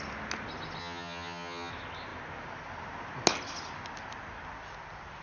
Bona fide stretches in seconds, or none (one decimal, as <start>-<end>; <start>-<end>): 0.0-0.8; 1.7-5.2

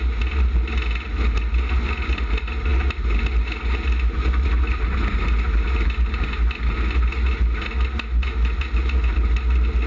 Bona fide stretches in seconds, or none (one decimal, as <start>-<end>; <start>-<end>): 0.0-9.9

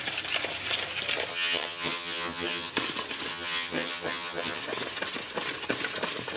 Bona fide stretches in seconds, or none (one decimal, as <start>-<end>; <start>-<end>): 0.0-1.3; 2.7-3.3; 4.6-6.4

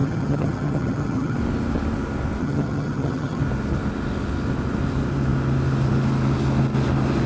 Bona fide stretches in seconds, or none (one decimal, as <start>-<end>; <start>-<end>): 1.4-2.4; 3.4-7.3

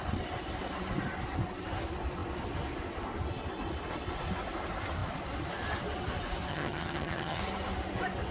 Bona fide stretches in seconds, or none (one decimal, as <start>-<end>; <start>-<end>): 0.0-6.5; 7.4-8.3